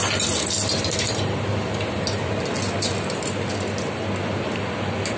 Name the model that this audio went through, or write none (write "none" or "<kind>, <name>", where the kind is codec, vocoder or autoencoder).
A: none